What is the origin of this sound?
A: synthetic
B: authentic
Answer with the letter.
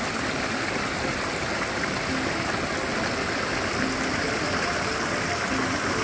B